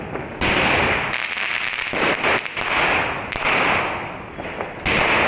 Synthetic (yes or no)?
no